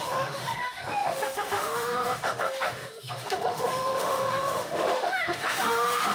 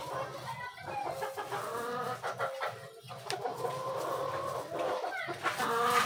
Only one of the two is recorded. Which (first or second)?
second